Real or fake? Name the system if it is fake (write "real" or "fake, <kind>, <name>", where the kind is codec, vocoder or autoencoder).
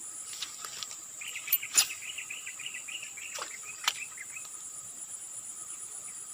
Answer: fake, vocoder, BigVGAN v2